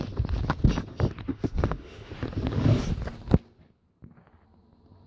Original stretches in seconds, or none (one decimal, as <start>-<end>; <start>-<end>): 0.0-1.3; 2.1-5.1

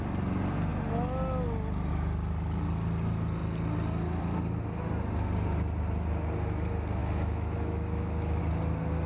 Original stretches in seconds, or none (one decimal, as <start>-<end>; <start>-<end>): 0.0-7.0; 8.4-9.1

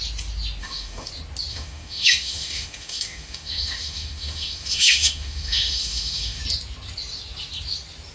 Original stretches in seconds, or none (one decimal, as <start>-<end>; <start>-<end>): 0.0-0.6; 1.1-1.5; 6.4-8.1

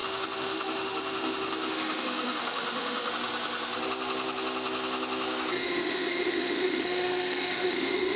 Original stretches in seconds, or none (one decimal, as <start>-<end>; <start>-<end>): 3.1-5.6